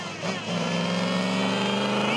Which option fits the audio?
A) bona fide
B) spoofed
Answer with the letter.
A